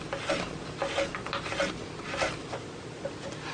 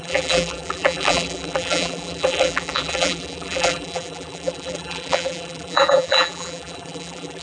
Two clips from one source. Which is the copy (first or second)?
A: second